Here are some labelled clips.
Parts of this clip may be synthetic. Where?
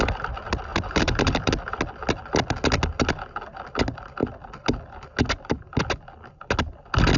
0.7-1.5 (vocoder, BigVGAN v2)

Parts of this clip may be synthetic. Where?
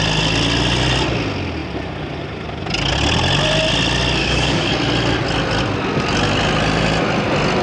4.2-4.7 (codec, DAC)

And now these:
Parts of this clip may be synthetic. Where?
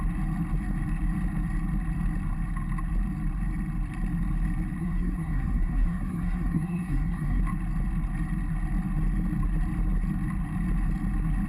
4.8-7.4 (codec, SNAC)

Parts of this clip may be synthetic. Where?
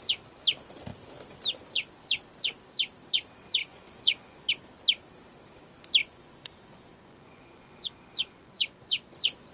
3.6-4.5 (vocoder, Vocos); 6.0-9.5